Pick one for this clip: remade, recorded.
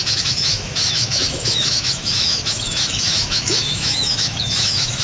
remade